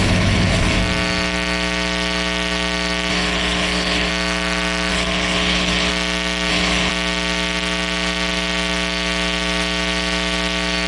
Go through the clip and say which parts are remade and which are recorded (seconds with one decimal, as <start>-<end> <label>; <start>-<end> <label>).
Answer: 0.0-0.8 remade; 0.8-3.1 recorded; 3.1-4.1 remade; 4.1-4.9 recorded; 4.9-5.9 remade; 5.9-6.5 recorded; 6.5-6.9 remade; 6.9-10.9 recorded